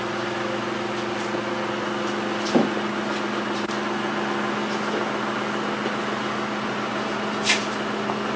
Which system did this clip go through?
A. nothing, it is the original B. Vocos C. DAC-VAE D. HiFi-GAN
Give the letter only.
A